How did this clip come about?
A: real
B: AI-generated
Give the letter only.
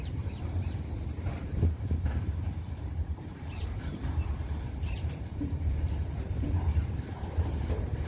B